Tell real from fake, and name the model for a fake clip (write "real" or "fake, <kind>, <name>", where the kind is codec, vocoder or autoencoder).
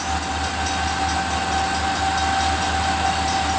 real